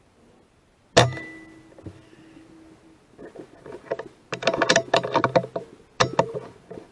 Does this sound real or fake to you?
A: real